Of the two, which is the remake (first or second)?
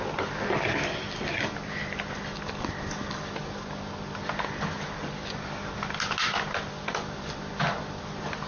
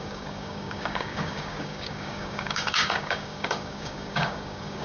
second